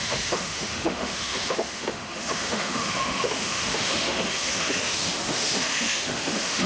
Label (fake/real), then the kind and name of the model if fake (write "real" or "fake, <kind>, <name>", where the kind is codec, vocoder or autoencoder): fake, autoencoder, DAC-VAE